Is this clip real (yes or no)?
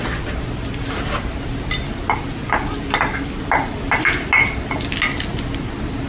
yes